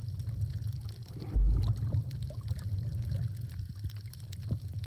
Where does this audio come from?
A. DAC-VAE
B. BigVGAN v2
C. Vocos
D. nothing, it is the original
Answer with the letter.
D